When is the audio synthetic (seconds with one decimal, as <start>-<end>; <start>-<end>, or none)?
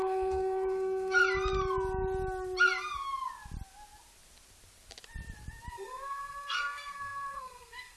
0.0-1.2; 5.7-8.0